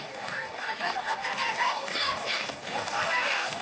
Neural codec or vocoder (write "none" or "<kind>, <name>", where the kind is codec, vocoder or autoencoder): codec, DAC